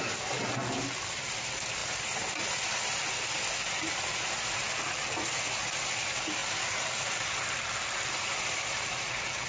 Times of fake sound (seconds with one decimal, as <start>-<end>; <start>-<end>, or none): none